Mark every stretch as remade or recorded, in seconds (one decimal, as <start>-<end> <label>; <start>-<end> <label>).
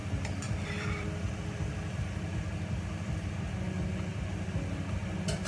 0.0-3.3 remade; 3.3-5.5 recorded